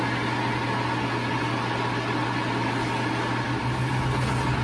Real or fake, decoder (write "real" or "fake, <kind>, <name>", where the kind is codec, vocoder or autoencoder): real